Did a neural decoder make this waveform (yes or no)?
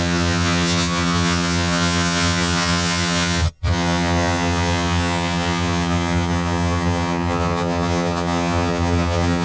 yes